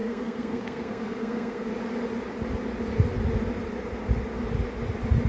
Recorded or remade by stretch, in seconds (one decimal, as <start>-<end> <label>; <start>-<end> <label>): 0.0-1.7 remade; 1.7-5.3 recorded